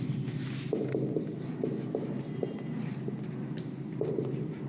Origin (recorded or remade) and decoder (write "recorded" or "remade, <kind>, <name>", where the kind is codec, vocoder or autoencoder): recorded